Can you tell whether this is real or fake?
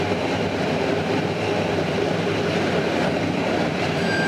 fake